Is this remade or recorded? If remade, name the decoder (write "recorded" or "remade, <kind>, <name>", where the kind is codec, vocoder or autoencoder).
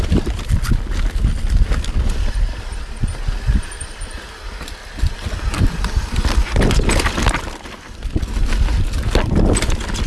recorded